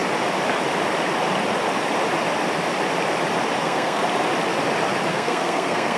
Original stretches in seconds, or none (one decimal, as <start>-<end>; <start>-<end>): 0.0-3.6; 4.0-5.1